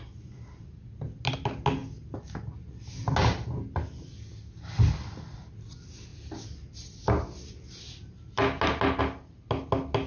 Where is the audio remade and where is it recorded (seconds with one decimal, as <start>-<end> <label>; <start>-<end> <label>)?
0.0-10.1 recorded